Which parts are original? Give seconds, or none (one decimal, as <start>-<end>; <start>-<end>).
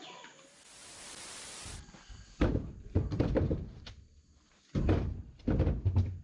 0.0-0.8; 4.5-6.2